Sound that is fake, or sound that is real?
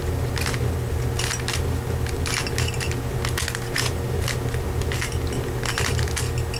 real